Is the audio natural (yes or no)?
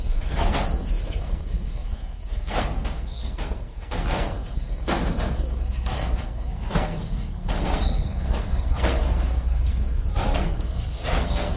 no